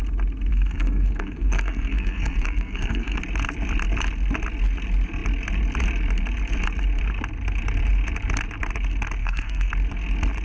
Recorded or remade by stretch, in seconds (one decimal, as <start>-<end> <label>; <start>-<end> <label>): 0.0-0.5 recorded; 0.5-3.2 remade; 3.2-9.2 recorded; 9.2-9.7 remade; 9.7-10.4 recorded